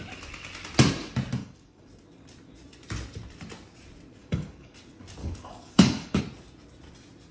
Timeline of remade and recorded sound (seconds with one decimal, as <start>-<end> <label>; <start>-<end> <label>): 0.0-1.4 recorded; 1.4-1.9 remade; 1.9-4.2 recorded; 4.2-4.8 remade; 4.8-5.2 recorded; 5.2-6.2 remade; 6.2-7.3 recorded